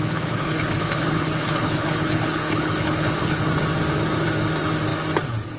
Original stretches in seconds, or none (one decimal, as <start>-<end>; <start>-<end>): 3.4-5.6